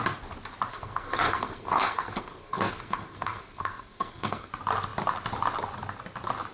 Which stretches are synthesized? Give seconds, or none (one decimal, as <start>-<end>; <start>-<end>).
0.7-4.5